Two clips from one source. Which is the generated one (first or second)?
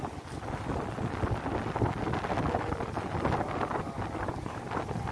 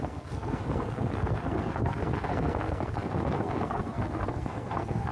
second